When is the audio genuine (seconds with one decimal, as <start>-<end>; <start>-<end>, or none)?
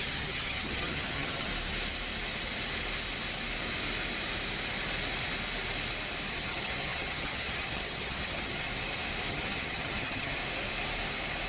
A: 1.5-6.3; 8.7-9.3; 10.4-11.5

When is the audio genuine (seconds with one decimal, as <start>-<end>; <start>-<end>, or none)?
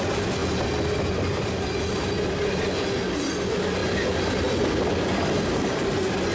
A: 0.0-6.3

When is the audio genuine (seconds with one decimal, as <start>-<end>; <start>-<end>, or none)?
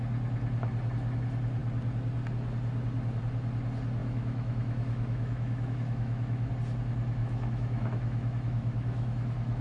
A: 0.0-4.0; 6.5-7.2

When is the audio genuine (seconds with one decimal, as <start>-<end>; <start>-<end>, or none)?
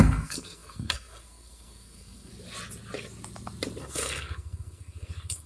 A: 2.3-3.8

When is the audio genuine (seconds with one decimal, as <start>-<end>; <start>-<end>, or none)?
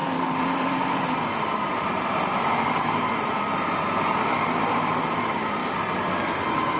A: 5.6-6.8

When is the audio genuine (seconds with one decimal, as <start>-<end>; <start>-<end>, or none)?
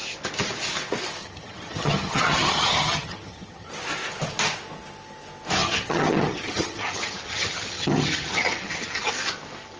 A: 0.0-1.2; 3.7-5.6; 9.1-9.8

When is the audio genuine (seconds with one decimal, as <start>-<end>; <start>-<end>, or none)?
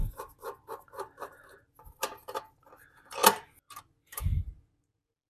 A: 0.0-5.3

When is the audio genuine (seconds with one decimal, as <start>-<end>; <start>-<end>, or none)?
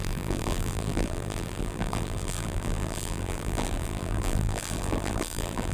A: none